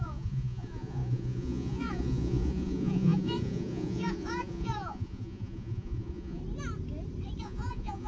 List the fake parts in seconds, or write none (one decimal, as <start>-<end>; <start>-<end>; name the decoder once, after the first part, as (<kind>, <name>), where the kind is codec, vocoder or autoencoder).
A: 0.0-6.4 (vocoder, Vocos); 7.4-8.1